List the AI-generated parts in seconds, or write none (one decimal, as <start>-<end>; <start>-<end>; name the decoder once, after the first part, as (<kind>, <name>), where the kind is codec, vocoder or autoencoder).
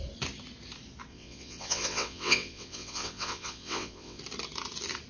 1.1-4.2 (vocoder, WaveNeXt)